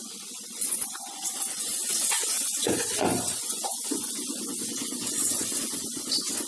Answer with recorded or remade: remade